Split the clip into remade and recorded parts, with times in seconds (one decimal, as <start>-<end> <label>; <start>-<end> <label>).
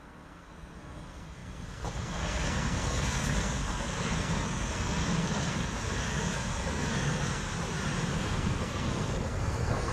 0.0-7.4 remade; 7.4-8.1 recorded; 8.1-9.9 remade